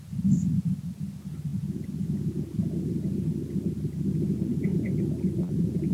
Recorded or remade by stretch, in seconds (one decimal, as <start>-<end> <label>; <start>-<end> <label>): 0.0-5.9 recorded